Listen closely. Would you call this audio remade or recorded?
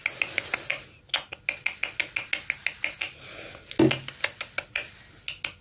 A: recorded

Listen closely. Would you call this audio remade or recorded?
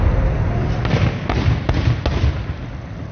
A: recorded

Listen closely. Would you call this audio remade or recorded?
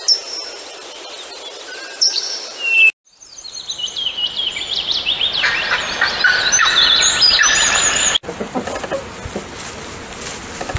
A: recorded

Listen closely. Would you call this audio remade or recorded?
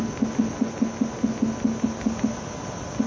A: recorded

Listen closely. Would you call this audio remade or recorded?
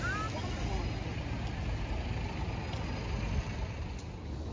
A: recorded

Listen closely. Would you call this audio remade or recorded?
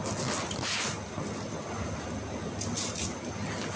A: recorded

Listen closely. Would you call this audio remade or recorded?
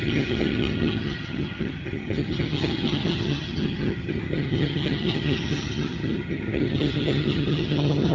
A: remade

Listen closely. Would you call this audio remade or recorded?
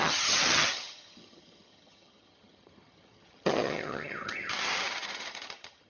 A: remade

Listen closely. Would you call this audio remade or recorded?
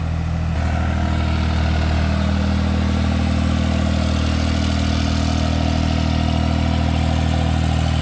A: recorded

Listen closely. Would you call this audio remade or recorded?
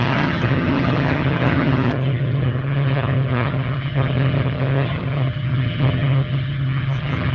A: remade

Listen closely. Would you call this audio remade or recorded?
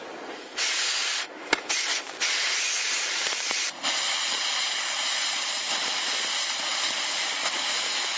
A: recorded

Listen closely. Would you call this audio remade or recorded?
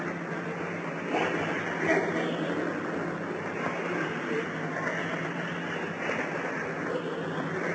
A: recorded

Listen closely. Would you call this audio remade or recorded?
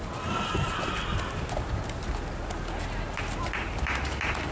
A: recorded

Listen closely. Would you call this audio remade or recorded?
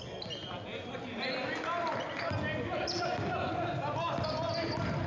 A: recorded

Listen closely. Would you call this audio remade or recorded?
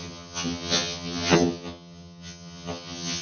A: remade